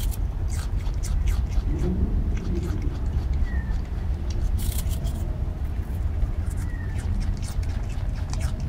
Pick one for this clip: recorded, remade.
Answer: remade